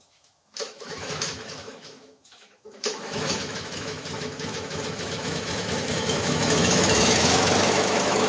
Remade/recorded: remade